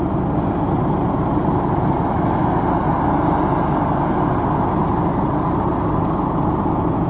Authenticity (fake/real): real